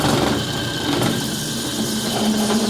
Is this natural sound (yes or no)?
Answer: yes